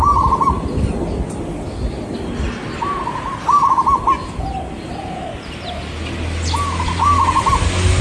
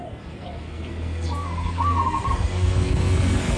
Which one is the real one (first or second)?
first